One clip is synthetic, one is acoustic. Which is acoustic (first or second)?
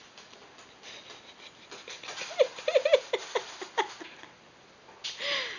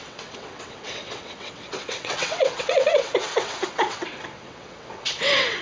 first